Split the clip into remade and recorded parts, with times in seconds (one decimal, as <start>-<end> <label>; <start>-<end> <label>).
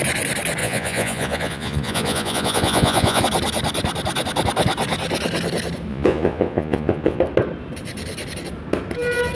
0.0-0.6 recorded; 0.6-3.2 remade; 3.2-5.9 recorded; 5.9-7.2 remade; 7.2-9.3 recorded